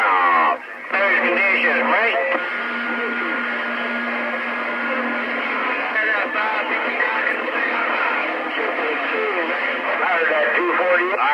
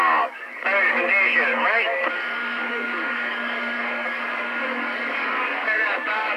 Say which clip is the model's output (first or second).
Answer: second